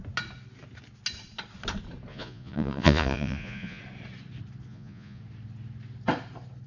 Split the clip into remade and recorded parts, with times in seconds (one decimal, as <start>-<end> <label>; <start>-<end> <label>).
0.0-2.1 recorded; 2.1-3.8 remade; 3.8-4.7 recorded; 4.7-5.2 remade; 5.2-6.7 recorded